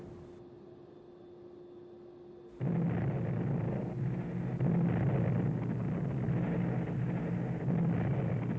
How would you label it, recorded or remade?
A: recorded